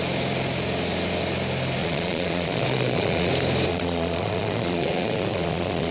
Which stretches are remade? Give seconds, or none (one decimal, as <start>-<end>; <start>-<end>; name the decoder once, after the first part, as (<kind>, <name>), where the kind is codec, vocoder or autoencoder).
1.8-3.3 (vocoder, Vocos); 3.7-5.9

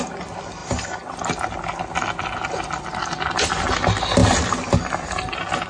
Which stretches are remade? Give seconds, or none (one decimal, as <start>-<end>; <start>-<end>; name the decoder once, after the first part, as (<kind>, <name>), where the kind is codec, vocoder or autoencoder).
none